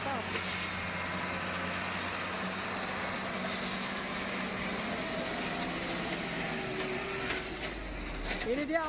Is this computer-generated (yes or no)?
no